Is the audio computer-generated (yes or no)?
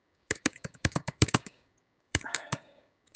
yes